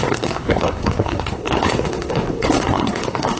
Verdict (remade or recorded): remade